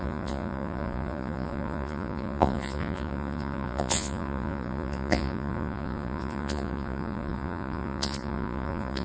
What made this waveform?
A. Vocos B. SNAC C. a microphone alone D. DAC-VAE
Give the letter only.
A